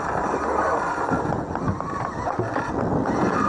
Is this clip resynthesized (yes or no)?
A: no